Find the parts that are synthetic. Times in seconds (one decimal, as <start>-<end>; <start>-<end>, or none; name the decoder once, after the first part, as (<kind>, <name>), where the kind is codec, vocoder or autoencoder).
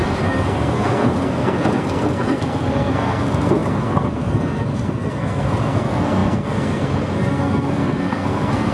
0.0-8.7 (codec, SNAC)